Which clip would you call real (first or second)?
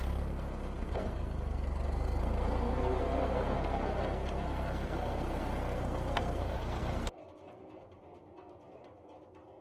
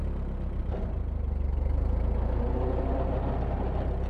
second